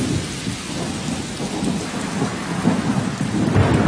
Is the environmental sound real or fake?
real